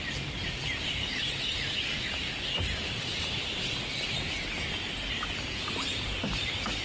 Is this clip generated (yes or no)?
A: yes